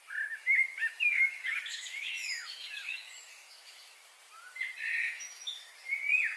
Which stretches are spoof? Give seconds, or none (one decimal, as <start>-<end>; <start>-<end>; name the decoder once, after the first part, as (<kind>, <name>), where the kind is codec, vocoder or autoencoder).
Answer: 0.8-4.1 (autoencoder, DAC-VAE); 5.0-5.7